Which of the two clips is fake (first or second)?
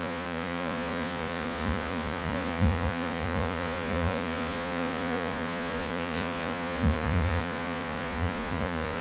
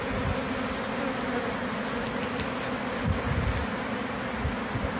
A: first